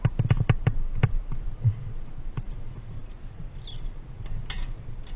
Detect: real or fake real